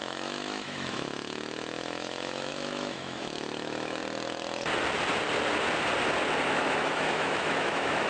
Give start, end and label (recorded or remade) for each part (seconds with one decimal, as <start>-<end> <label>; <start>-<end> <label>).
0.0-4.0 remade; 4.0-6.5 recorded; 6.5-8.1 remade